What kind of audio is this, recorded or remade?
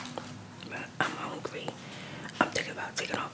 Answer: recorded